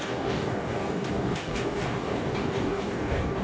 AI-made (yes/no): yes